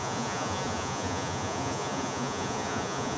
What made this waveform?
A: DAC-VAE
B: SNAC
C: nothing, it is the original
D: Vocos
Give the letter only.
D